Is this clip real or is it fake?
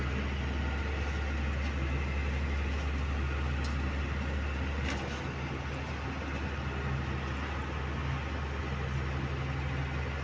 real